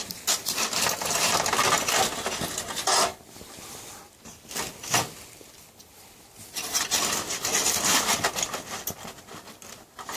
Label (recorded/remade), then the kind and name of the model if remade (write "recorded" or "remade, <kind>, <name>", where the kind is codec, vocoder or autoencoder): recorded